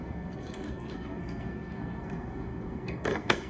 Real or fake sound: fake